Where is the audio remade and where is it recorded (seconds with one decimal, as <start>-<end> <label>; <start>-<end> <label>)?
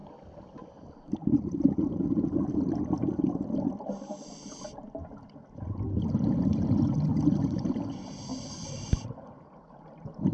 0.0-10.3 recorded